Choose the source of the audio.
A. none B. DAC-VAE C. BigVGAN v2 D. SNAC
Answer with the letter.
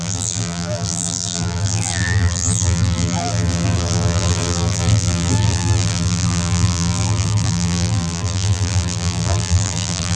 C